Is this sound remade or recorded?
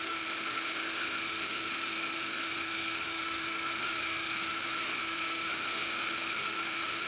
remade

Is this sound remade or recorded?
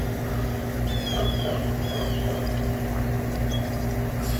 recorded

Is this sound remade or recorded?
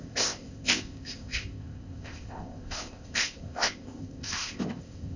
remade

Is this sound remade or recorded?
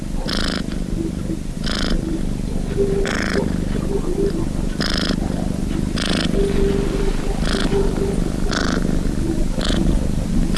recorded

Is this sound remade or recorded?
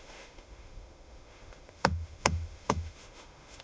remade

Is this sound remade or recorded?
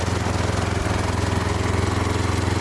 recorded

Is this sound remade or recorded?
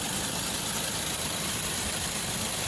recorded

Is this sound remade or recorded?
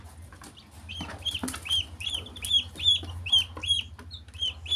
recorded